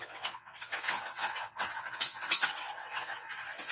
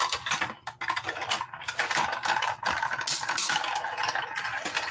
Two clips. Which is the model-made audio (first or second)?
first